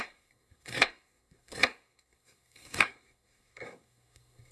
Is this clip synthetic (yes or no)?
yes